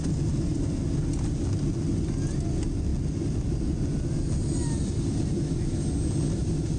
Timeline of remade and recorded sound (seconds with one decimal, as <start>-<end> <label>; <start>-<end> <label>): 0.0-6.8 recorded